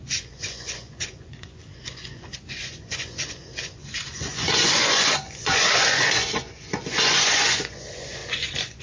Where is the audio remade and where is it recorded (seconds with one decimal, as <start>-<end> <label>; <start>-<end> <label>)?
0.0-8.8 remade